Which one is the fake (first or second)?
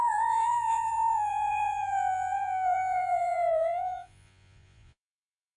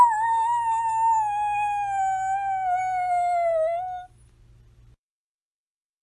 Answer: first